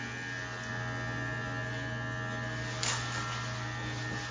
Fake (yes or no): no